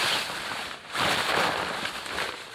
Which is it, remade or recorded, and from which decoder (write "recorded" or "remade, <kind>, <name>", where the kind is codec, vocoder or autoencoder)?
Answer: recorded